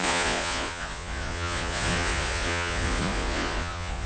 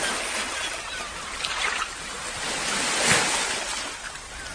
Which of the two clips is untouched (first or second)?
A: second